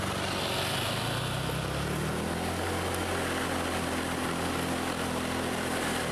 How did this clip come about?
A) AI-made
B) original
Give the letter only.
B